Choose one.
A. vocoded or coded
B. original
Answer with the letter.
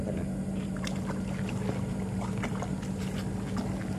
B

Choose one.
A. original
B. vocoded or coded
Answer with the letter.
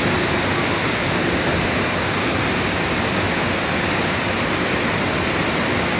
A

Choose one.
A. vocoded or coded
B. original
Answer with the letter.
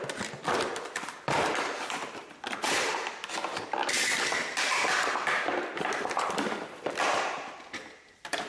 A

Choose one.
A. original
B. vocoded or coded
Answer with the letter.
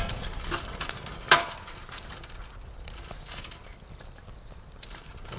A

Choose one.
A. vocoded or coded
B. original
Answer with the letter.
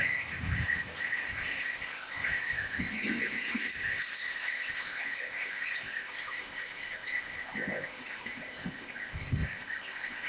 A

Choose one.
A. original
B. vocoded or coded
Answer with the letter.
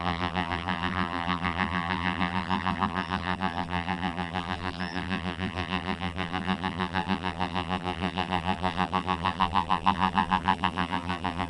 B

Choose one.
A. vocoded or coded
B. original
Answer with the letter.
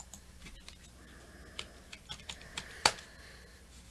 B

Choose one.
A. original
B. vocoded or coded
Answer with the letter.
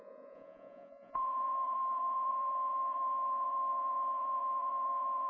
B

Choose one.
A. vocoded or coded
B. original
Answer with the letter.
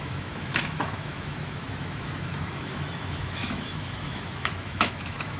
A